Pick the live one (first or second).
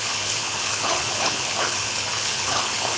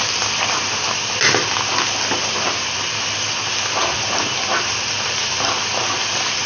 second